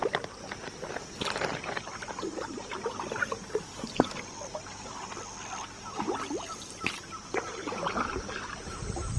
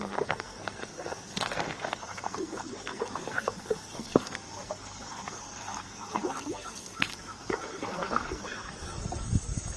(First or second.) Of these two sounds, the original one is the first